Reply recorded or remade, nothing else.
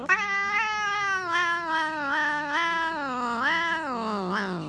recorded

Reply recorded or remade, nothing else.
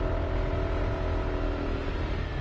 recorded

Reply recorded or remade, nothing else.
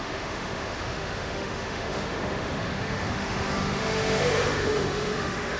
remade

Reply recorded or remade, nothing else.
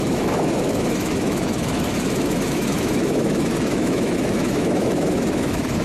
remade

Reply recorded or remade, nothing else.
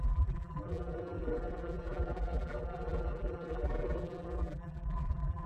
remade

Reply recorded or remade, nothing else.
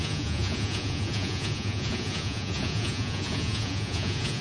remade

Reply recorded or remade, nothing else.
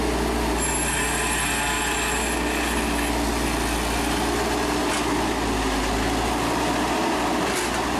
recorded